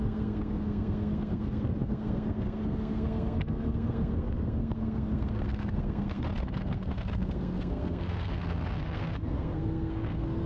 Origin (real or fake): fake